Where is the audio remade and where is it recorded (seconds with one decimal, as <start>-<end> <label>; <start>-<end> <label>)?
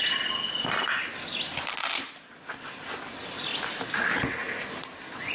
0.0-5.3 recorded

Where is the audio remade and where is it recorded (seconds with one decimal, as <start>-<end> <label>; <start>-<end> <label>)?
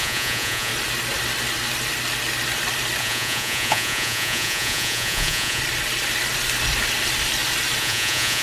0.0-0.7 remade; 0.7-3.0 recorded; 3.0-5.6 remade; 5.6-7.8 recorded; 7.8-8.4 remade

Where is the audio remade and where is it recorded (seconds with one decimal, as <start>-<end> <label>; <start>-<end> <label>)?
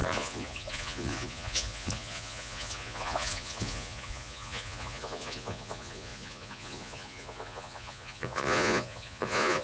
0.0-9.6 remade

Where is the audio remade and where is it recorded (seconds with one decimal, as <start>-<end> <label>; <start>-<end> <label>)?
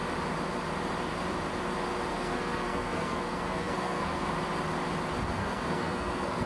0.0-2.1 recorded; 2.1-4.3 remade; 4.3-5.4 recorded; 5.4-6.5 remade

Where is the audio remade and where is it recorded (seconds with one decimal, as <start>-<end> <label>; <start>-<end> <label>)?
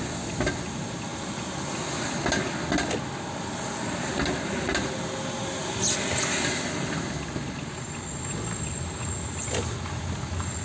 0.0-10.6 recorded